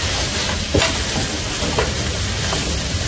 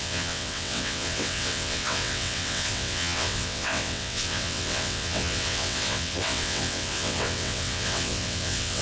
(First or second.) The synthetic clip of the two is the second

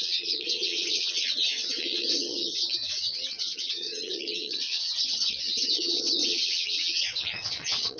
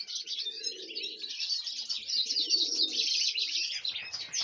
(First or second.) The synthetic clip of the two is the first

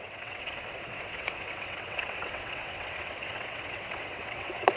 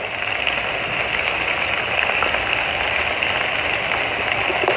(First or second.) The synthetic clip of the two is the first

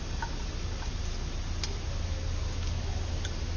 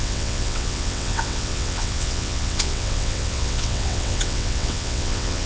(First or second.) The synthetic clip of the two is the second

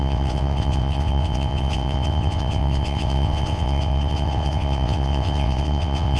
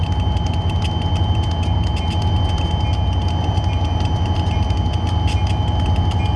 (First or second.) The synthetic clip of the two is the first